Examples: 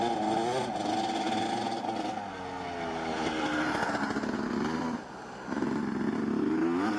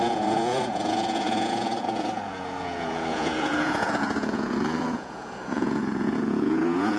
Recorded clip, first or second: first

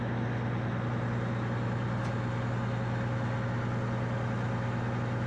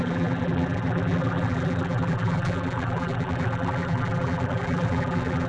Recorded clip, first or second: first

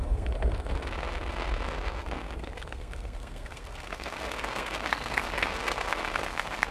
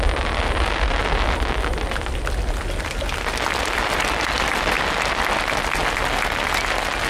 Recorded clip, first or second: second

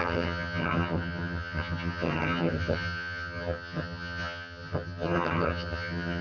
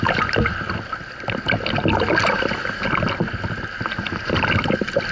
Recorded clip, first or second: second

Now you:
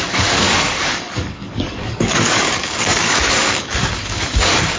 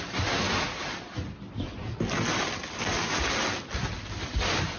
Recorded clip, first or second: second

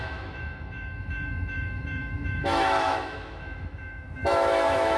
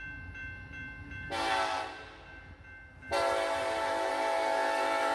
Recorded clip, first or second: second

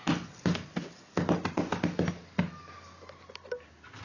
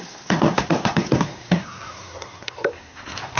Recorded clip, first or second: first